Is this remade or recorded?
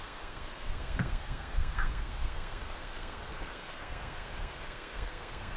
remade